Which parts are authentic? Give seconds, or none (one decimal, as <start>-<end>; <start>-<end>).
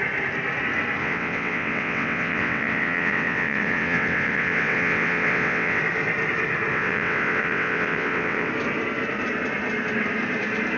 0.0-1.0; 5.8-6.7; 8.5-10.8